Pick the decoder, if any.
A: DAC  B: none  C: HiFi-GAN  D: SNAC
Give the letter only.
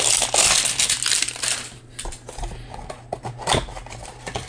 B